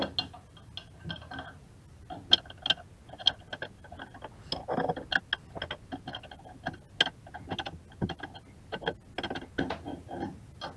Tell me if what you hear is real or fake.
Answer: real